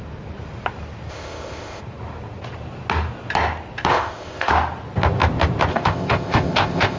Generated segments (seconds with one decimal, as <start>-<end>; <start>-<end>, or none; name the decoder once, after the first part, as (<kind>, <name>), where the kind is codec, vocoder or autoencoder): 1.1-1.8 (codec, ZipCodec); 3.9-4.5; 5.7-7.0